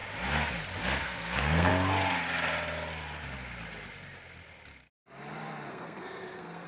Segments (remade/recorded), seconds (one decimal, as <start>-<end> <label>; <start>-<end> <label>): 0.0-1.0 recorded; 1.0-1.7 remade; 1.7-5.7 recorded; 5.7-6.7 remade